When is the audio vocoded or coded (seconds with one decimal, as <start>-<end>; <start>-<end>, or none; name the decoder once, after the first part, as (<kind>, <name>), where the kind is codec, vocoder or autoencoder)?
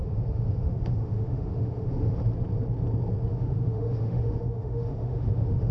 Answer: 0.0-2.2 (autoencoder, DAC-VAE); 3.3-5.7